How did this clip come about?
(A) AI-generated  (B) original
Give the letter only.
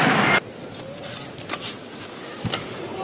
B